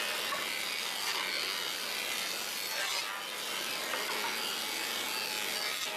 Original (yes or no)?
yes